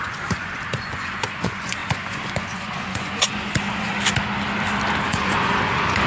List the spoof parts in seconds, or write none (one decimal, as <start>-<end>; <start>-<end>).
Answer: 0.0-3.9; 5.1-6.1